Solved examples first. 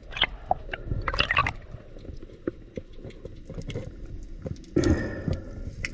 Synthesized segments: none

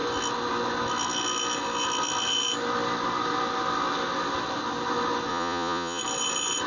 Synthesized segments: 5.3-6.0 (vocoder, Vocos)

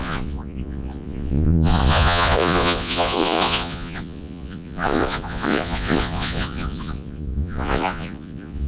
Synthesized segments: 0.0-8.7 (vocoder, Vocos)

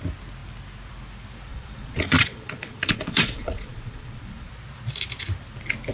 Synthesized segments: 1.5-4.5 (vocoder, Vocos)

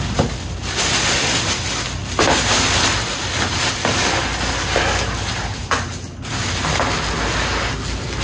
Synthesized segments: none

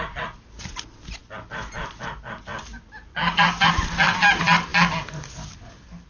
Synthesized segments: none

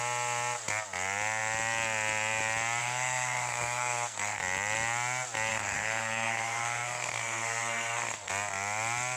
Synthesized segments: 2.8-4.4 (codec, SNAC); 5.5-8.3